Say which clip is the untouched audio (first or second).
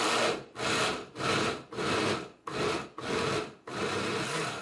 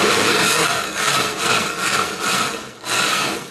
first